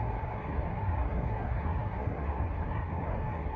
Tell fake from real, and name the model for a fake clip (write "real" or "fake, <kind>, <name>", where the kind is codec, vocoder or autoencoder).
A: fake, codec, SNAC